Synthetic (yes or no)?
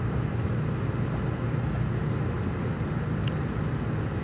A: no